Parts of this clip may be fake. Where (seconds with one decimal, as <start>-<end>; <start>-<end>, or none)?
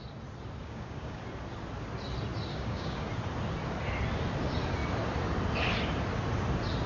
0.6-1.2; 2.5-3.1